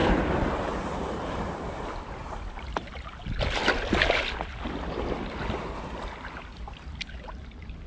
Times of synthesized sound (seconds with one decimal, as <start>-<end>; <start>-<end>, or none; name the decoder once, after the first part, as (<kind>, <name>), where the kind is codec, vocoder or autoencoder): none

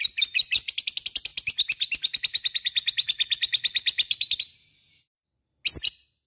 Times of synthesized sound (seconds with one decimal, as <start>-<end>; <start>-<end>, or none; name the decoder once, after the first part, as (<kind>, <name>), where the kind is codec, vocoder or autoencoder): none

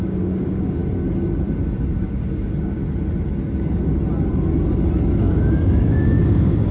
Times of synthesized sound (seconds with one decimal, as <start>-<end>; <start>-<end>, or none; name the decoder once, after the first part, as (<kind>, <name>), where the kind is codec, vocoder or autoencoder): 0.0-0.8 (codec, DAC); 2.0-2.8; 5.2-6.7

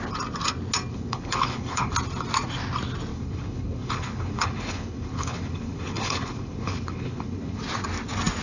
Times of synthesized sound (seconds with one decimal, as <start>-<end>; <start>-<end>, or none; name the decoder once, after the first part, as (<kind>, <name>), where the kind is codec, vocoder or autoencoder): 0.9-1.9 (codec, HILCodec); 3.1-7.6

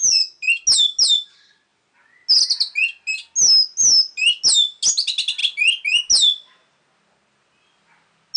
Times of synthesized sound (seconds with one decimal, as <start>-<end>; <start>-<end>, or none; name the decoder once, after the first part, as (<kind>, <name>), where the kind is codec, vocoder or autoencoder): none